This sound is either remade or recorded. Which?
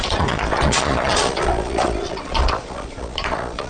remade